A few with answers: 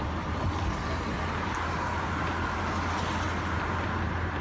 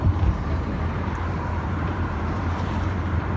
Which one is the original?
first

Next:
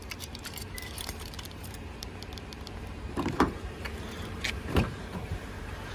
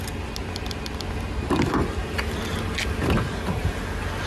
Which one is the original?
second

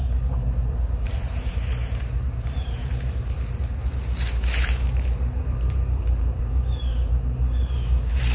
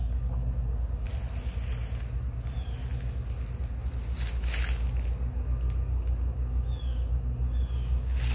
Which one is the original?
second